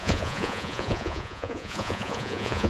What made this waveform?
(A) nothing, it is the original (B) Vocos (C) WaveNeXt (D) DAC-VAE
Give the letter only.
B